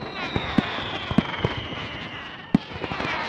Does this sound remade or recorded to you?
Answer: recorded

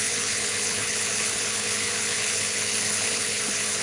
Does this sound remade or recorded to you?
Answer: remade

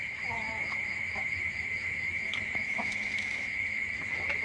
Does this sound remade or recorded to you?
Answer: remade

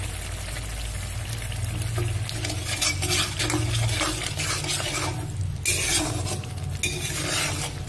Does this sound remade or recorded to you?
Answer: recorded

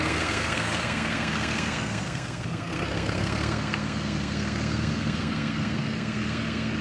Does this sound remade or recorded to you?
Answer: remade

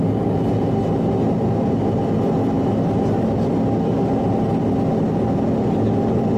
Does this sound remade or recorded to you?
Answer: recorded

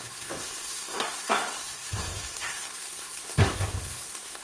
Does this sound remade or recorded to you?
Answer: remade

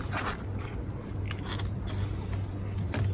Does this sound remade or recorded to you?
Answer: recorded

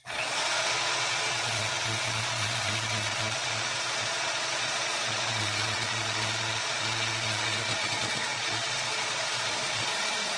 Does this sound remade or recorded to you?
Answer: remade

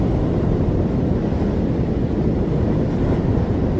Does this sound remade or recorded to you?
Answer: recorded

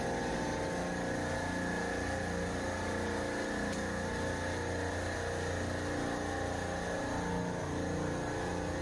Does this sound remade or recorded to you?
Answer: recorded